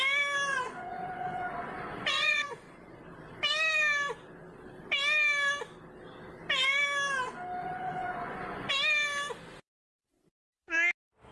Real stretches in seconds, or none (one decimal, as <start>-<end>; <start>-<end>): 0.0-0.5; 3.0-7.6; 8.7-11.3